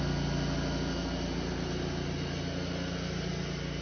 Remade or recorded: recorded